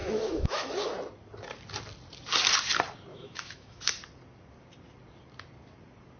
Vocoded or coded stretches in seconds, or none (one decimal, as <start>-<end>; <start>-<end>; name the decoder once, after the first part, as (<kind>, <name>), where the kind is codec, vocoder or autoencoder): 0.0-0.7 (autoencoder, DAC-VAE); 3.1-3.8